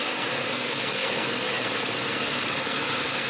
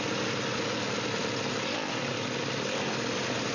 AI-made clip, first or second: first